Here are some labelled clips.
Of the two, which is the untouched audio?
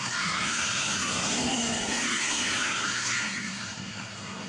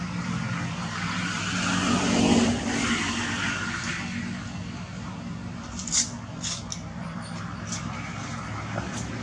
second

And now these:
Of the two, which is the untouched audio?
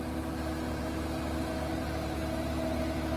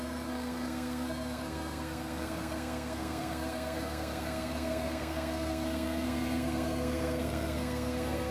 first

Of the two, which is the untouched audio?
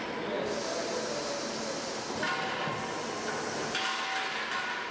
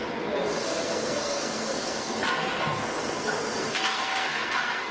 first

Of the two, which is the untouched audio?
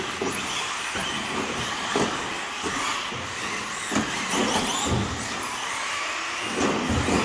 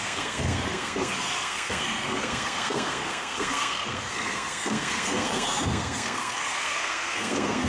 first